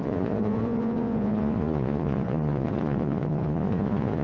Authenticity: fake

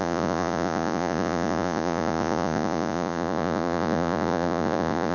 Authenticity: fake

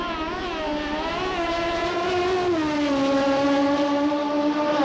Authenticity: real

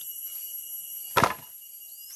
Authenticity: real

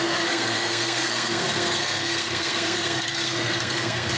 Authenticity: fake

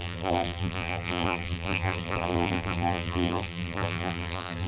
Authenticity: fake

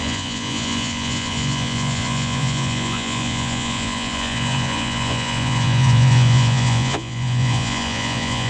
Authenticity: fake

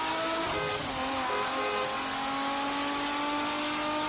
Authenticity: real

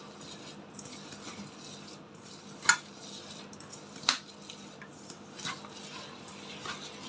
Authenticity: real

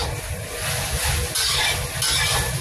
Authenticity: real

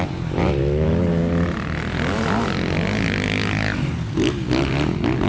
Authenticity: real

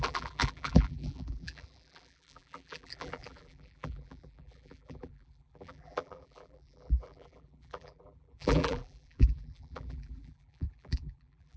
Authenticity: fake